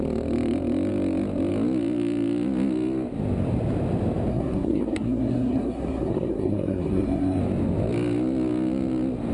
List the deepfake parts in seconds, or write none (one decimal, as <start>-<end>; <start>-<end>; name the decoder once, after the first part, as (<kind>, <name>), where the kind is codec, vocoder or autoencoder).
4.3-7.4 (codec, SNAC)